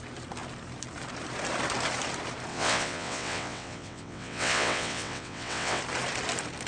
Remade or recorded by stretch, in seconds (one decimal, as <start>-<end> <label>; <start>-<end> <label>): 0.0-2.5 recorded; 2.5-5.8 remade; 5.8-6.7 recorded